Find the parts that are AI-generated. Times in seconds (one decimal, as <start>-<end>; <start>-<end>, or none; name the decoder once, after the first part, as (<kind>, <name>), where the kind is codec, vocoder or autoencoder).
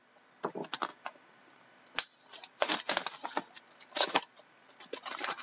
none